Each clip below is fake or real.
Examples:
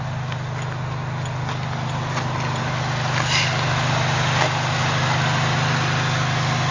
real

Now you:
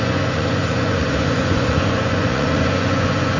fake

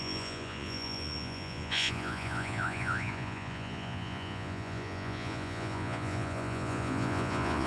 fake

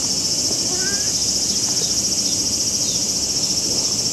real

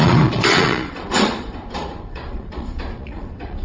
fake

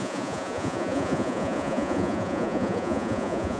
fake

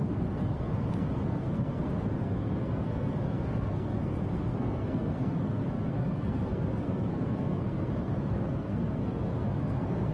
fake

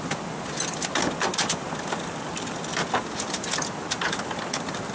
fake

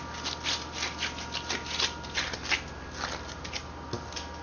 real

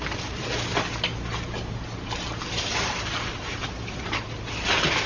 real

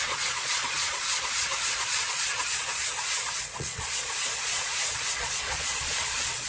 fake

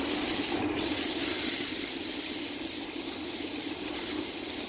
real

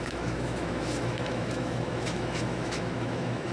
fake